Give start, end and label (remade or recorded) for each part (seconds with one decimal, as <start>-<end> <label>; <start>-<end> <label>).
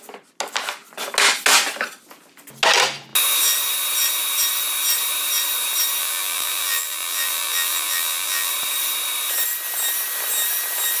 0.0-6.0 recorded; 6.0-8.5 remade; 8.5-11.0 recorded